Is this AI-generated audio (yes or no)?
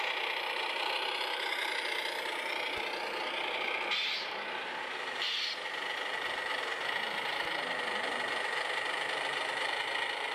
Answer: no